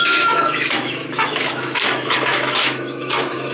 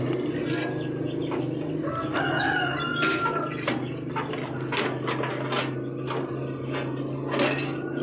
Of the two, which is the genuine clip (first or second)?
second